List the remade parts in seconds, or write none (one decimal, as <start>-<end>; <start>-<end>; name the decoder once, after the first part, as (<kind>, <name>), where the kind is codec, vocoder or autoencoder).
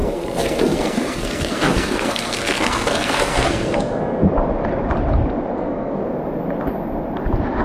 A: 0.0-4.2 (codec, SNAC); 5.5-6.0